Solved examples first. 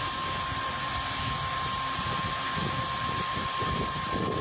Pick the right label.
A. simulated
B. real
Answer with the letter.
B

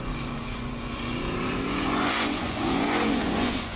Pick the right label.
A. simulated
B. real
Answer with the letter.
A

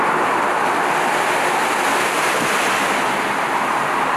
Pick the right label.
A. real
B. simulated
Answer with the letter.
A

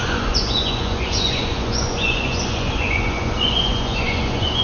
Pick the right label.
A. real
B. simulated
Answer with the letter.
B